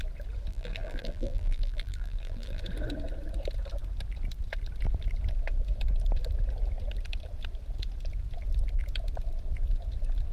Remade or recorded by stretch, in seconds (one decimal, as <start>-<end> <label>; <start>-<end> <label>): 0.0-0.5 recorded; 0.5-2.6 remade; 2.6-10.3 recorded